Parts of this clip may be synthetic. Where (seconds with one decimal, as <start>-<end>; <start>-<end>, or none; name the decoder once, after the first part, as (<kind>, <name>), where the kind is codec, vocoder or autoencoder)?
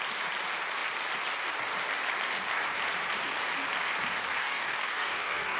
4.4-5.6 (codec, DAC)